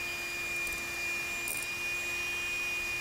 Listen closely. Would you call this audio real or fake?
real